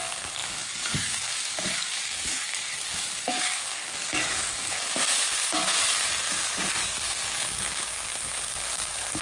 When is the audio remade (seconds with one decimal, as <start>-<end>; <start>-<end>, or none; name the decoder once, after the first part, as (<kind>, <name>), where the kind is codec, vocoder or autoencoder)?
0.0-5.7 (codec, DAC); 6.3-9.2